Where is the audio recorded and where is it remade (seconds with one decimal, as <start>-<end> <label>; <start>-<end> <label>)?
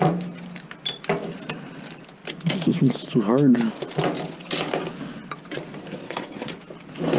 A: 0.0-5.8 recorded; 5.8-6.5 remade; 6.5-7.2 recorded